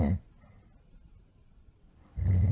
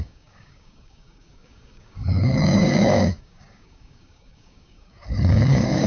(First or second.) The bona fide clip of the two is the first